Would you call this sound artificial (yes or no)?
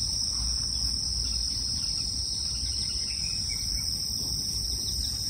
no